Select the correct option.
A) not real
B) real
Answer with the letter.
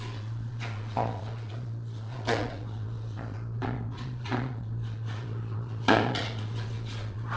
A